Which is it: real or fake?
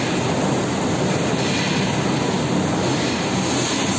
real